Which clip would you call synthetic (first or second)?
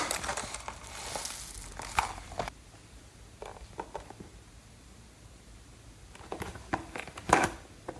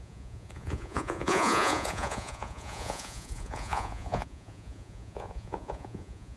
second